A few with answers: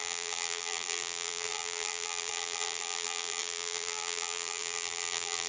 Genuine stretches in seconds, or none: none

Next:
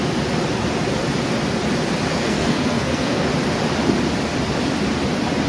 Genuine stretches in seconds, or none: 0.0-2.1; 3.3-5.5

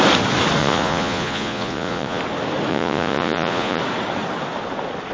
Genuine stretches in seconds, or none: 0.0-0.6; 2.2-2.7; 3.8-5.1

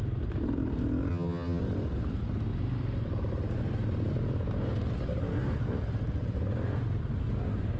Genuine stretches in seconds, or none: 0.0-1.1; 1.6-7.8